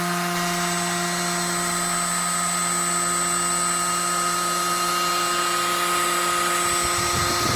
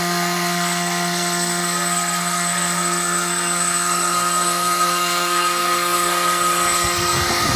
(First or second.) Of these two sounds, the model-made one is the second